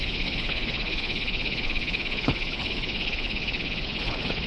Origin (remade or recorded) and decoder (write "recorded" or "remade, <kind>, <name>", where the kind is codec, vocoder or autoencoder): remade, codec, HILCodec